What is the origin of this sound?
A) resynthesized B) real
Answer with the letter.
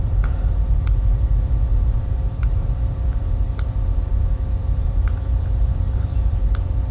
A